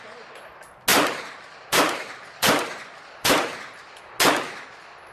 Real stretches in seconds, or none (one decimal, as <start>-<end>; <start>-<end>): 0.0-0.9; 4.0-5.1